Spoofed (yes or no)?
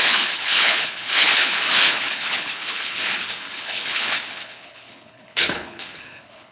yes